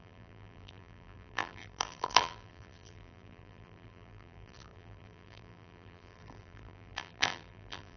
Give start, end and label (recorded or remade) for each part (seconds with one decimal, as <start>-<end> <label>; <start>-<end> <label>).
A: 0.0-8.0 remade

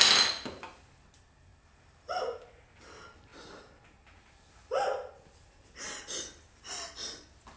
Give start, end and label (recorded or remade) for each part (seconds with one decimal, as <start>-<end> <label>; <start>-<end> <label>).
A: 0.0-1.5 recorded; 1.5-2.6 remade; 2.6-7.6 recorded